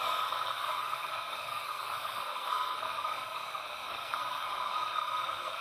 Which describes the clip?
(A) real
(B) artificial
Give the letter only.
B